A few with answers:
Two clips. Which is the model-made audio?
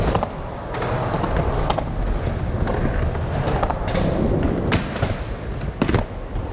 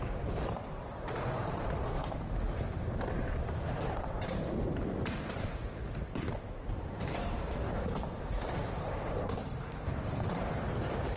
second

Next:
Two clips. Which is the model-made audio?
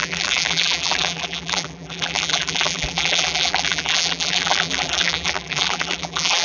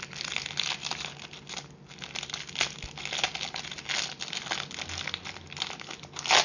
first